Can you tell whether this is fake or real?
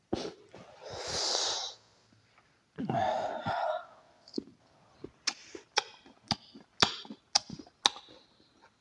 real